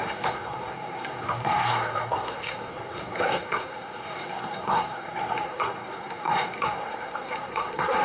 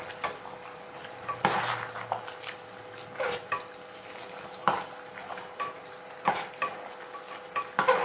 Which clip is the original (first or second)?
second